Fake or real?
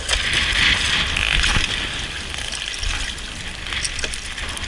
real